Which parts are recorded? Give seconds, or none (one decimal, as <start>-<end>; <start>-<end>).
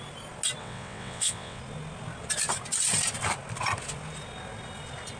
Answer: 0.0-0.6; 1.6-5.2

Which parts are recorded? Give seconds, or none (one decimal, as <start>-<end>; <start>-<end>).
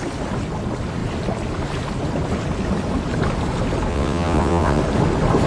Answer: 0.0-3.9; 4.8-5.5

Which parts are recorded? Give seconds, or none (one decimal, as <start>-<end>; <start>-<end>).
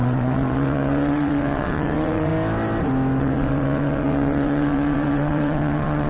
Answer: 2.3-3.2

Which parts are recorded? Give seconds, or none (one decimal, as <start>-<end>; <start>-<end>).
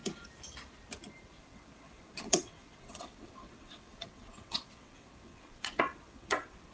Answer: 0.0-1.4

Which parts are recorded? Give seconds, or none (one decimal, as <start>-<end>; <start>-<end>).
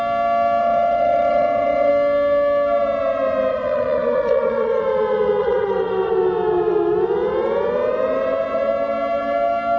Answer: 0.0-0.6; 1.9-3.5; 4.8-5.4; 6.1-9.8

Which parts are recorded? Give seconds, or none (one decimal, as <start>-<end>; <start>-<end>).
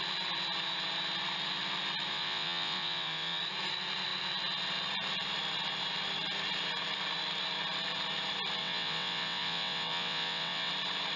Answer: 0.0-2.1; 3.4-8.6; 10.7-11.2